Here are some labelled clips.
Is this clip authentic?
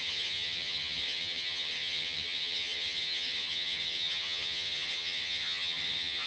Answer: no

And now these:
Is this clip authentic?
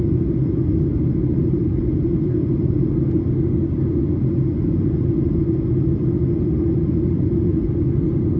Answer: yes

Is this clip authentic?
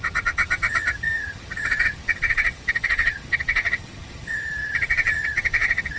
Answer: no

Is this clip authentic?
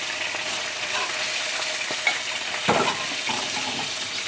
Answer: yes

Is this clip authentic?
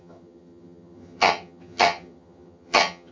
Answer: no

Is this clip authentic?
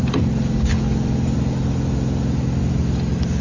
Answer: yes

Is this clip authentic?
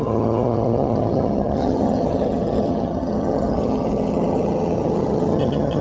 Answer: no